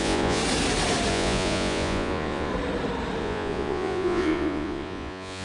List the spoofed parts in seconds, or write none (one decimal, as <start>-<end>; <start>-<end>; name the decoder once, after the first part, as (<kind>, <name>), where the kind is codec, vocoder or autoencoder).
0.0-0.4 (vocoder, Vocos); 1.1-2.5; 3.2-5.4